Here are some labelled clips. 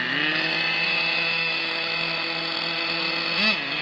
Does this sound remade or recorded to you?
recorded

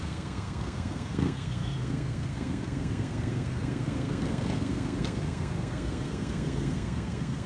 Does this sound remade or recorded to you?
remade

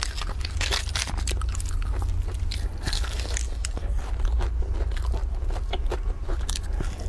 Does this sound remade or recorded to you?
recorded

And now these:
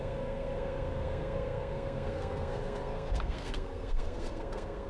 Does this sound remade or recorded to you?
remade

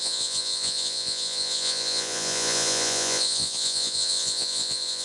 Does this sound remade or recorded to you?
remade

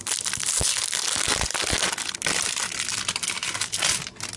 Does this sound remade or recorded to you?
recorded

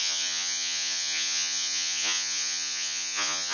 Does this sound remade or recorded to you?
remade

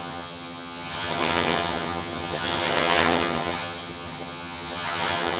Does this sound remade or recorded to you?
remade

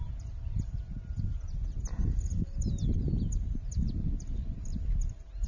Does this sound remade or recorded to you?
recorded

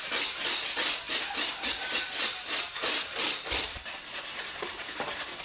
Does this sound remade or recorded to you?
recorded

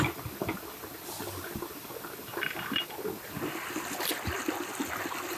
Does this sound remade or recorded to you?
recorded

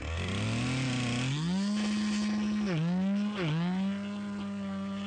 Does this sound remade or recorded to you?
recorded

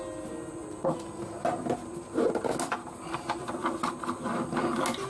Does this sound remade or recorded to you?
recorded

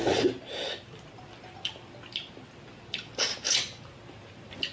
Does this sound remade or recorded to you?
recorded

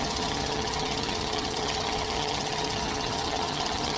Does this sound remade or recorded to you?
remade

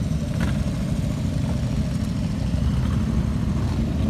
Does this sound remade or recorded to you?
recorded